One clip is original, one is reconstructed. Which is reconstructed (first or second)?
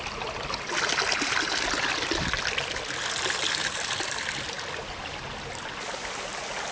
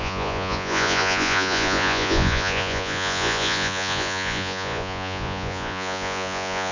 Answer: second